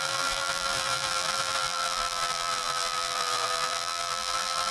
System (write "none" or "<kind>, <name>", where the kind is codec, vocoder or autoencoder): vocoder, BigVGAN v2